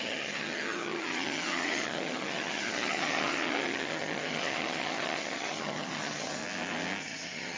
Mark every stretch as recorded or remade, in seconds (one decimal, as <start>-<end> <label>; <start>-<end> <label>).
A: 0.0-6.4 remade; 6.4-7.0 recorded; 7.0-7.6 remade